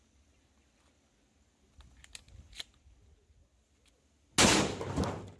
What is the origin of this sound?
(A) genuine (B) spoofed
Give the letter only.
A